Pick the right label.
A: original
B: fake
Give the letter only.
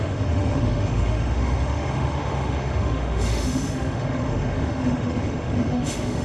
B